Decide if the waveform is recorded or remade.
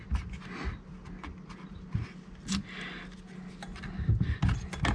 recorded